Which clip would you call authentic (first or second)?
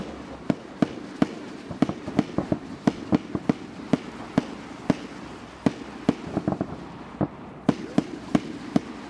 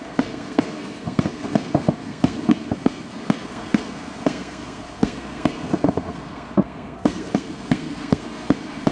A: first